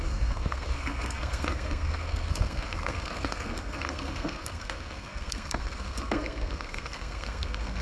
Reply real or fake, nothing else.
fake